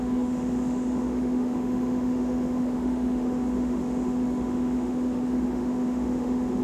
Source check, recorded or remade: remade